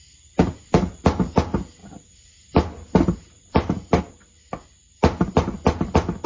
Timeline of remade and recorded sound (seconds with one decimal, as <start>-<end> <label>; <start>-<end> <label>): 0.0-6.3 recorded

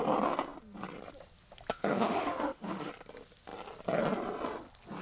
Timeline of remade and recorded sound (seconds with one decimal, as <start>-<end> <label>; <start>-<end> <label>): 0.0-1.7 recorded; 1.7-2.9 remade; 2.9-5.0 recorded

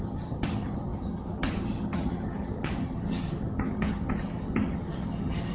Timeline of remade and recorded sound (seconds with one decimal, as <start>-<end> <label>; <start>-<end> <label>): 0.0-5.5 remade

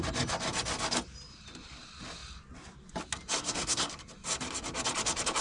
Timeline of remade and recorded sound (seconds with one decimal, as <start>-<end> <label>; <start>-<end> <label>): 0.0-3.4 recorded; 3.4-3.9 remade; 3.9-5.4 recorded